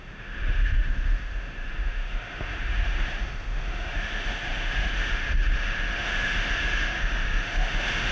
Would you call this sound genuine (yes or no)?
no